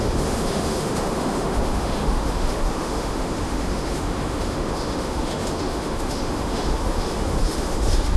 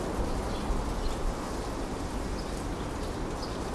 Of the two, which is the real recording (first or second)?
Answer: second